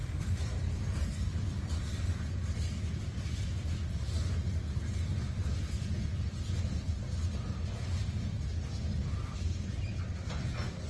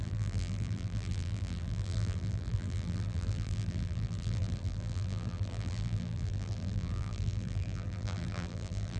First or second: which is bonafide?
first